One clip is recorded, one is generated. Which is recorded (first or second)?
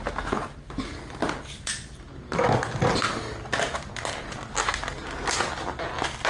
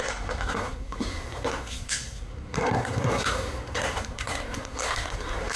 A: first